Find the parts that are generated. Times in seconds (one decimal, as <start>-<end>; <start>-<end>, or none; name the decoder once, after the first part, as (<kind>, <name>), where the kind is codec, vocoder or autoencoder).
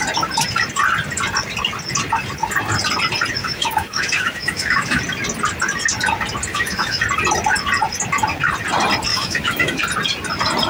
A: 3.4-5.0 (autoencoder, DAC-VAE); 6.5-7.0; 9.1-9.8